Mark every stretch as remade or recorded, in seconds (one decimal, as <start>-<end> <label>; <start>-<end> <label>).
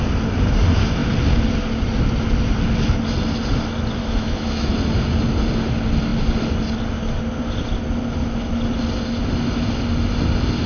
0.0-4.0 recorded; 4.0-4.7 remade; 4.7-10.7 recorded